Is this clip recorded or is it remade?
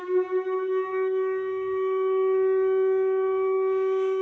remade